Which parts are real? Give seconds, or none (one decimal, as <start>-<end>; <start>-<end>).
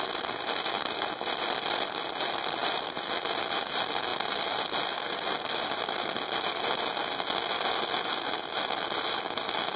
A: 0.0-9.8